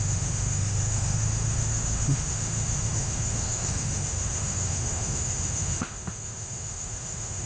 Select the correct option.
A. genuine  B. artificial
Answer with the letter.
B